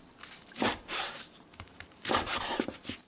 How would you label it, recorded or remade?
remade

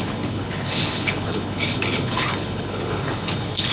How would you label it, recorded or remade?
remade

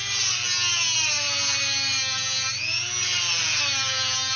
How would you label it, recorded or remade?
recorded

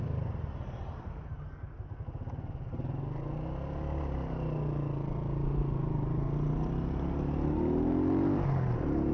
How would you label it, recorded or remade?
recorded